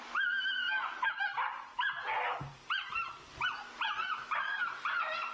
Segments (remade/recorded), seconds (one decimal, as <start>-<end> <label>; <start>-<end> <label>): 0.0-0.6 recorded; 0.6-1.2 remade; 1.2-2.4 recorded; 2.4-3.0 remade; 3.0-5.3 recorded